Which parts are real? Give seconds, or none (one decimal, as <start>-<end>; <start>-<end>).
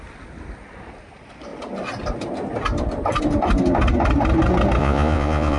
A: 0.0-4.8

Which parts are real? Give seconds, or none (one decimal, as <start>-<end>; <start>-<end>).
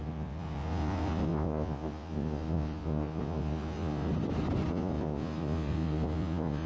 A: 4.1-4.7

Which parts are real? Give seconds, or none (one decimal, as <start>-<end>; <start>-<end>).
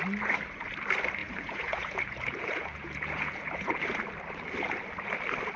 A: 0.0-1.2; 3.8-5.6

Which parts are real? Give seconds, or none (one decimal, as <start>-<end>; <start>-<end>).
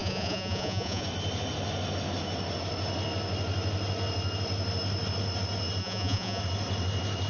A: 1.0-5.8; 6.4-7.3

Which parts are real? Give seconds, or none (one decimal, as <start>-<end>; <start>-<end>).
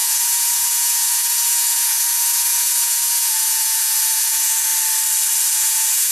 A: 4.7-5.5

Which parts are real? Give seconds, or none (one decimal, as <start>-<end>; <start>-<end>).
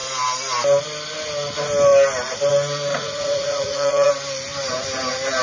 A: 0.0-2.9; 4.1-5.4